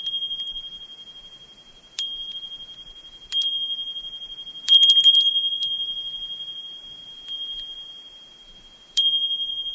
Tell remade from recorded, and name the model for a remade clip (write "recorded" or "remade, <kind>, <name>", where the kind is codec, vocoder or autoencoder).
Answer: remade, vocoder, BigVGAN v2